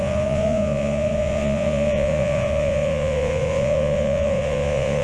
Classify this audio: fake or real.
fake